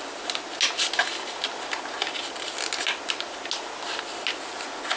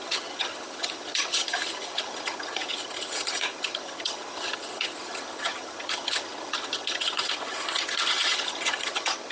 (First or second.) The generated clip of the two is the second